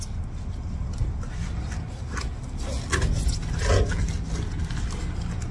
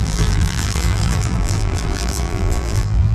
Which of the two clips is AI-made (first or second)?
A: second